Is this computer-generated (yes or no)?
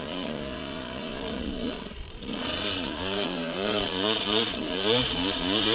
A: yes